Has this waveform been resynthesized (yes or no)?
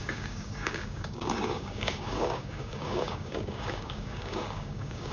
yes